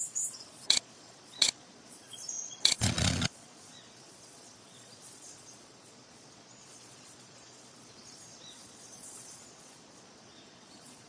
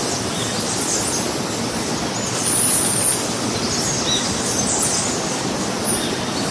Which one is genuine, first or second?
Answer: second